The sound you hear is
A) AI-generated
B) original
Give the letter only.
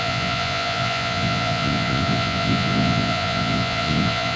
A